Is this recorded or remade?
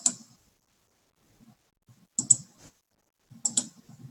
recorded